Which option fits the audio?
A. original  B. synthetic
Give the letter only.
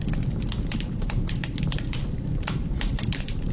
B